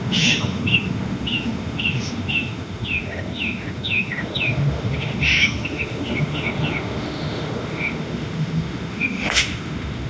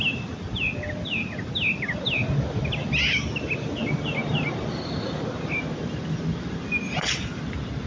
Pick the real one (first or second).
second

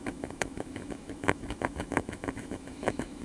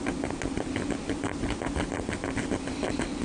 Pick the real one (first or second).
second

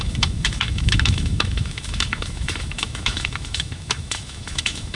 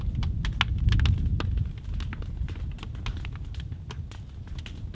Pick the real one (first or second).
second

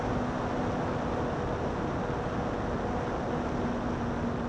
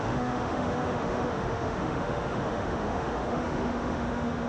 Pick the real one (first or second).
first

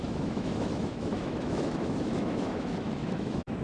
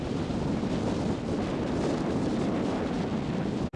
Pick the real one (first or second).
second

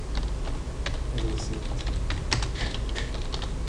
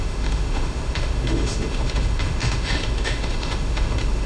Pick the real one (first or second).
first